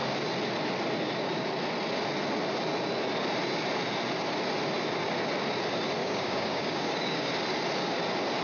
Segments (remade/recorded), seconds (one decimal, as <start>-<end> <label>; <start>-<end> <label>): 0.0-6.0 recorded; 6.0-7.3 remade; 7.3-8.4 recorded